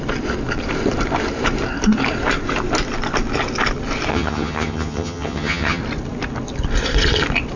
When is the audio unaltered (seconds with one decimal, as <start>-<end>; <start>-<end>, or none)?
0.0-4.1; 5.8-7.6